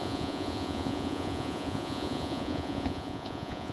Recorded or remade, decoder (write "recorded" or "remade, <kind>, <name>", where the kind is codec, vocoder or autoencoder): remade, vocoder, Vocos